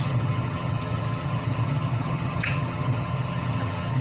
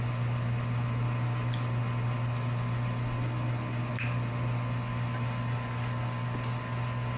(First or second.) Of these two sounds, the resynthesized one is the first